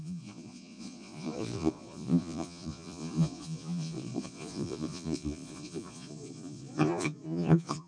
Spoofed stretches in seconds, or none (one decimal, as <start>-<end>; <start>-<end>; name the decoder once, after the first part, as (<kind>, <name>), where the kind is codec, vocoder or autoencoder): 0.0-7.9 (vocoder, Vocos)